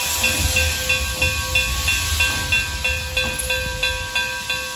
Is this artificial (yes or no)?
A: no